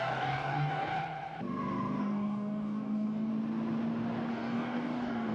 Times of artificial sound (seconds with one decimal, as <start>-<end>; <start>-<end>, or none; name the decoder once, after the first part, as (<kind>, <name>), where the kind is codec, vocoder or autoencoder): 0.0-0.9 (codec, DAC); 2.0-3.3; 4.3-5.3